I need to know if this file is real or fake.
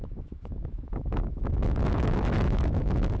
fake